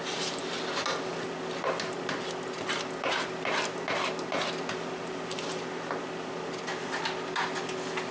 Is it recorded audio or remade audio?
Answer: recorded